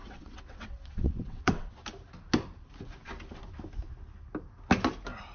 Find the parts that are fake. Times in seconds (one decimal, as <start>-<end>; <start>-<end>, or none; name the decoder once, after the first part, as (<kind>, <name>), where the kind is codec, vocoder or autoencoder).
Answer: 0.0-1.7 (vocoder, WaveNeXt)